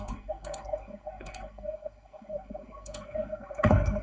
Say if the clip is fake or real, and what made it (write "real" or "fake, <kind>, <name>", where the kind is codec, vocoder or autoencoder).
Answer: fake, codec, SNAC